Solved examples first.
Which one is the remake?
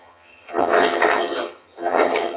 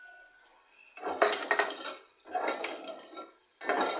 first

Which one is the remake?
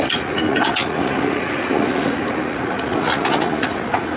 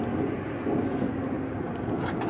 first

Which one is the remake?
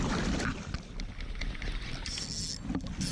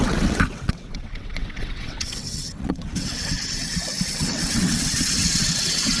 second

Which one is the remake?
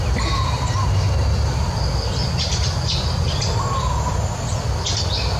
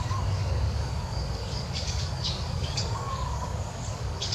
second